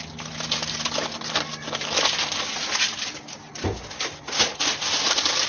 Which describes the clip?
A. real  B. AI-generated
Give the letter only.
A